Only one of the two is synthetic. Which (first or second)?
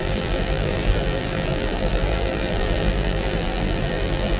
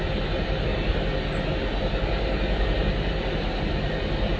first